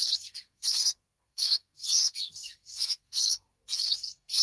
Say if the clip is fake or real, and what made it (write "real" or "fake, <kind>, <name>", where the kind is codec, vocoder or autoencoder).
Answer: fake, codec, SNAC